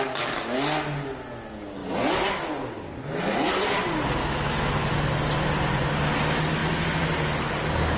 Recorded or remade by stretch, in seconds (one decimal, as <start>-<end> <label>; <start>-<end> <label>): 0.0-4.2 recorded; 4.2-4.9 remade; 4.9-8.0 recorded